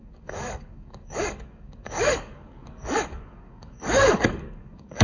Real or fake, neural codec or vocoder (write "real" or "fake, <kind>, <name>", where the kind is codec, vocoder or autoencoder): fake, codec, DAC